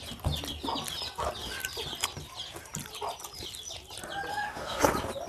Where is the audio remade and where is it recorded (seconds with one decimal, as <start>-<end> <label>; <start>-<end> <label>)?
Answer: 0.0-4.3 recorded; 4.3-4.8 remade; 4.8-5.3 recorded